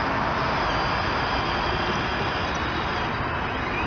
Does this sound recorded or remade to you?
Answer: recorded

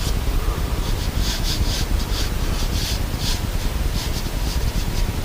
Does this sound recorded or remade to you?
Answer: recorded